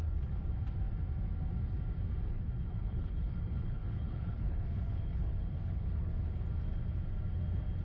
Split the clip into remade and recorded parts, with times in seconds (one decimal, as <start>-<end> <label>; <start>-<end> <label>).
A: 0.0-0.4 remade; 0.4-2.3 recorded; 2.3-6.1 remade; 6.1-7.8 recorded